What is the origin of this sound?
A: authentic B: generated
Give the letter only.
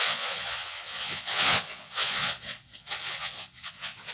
B